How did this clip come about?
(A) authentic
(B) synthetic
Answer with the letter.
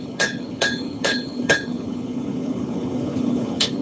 B